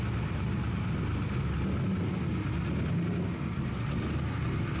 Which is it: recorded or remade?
recorded